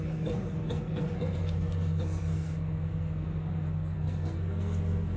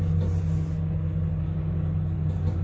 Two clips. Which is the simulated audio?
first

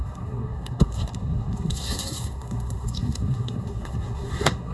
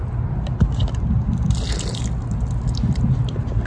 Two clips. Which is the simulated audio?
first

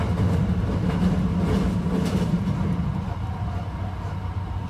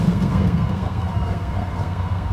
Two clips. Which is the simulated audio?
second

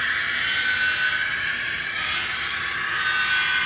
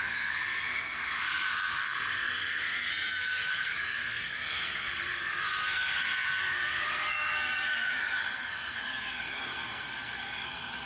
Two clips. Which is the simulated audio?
second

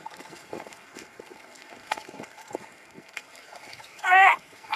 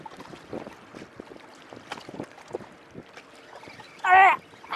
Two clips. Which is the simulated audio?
first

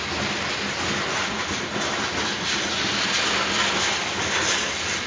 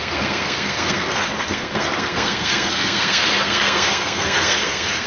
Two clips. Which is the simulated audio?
second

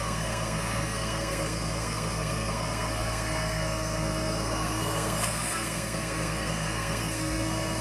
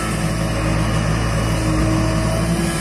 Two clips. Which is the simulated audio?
first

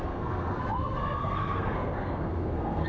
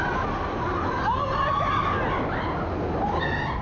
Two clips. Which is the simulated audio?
first